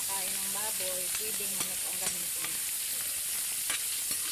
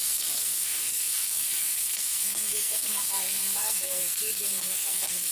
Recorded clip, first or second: first